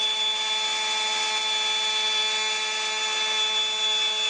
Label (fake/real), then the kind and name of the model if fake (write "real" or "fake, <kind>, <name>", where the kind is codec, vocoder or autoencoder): real